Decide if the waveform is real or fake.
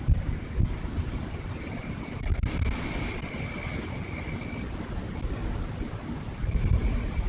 real